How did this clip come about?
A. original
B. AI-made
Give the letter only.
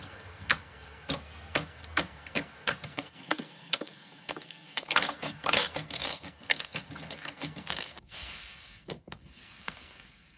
B